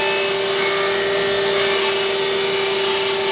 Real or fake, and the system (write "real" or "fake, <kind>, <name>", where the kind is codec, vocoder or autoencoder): real